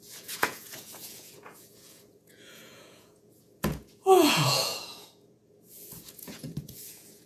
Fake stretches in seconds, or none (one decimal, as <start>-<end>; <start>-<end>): 0.0-7.3